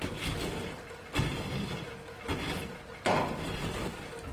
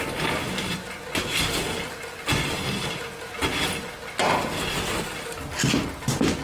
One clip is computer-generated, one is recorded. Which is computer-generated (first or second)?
first